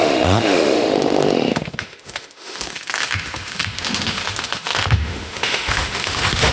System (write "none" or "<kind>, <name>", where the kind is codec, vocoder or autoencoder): autoencoder, DAC-VAE